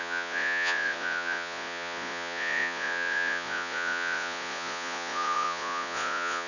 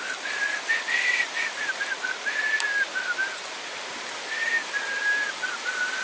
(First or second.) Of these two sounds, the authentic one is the second